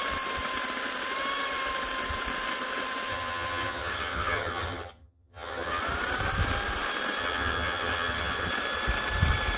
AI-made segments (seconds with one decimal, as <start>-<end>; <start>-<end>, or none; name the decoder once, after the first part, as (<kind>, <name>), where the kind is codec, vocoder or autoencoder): 3.1-5.8 (vocoder, HiFi-GAN); 7.2-8.5